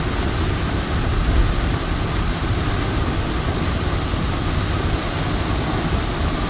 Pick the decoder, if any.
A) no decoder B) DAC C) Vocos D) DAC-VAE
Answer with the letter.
A